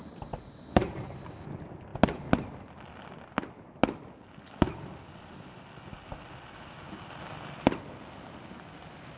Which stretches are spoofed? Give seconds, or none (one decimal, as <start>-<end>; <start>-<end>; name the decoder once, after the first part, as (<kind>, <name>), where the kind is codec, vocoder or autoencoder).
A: 0.0-1.3 (vocoder, BigVGAN v2)